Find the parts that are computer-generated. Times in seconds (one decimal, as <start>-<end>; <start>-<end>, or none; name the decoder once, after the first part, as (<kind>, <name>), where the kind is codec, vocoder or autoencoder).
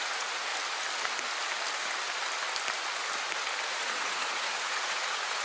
0.0-0.5 (vocoder, Vocos); 3.7-5.4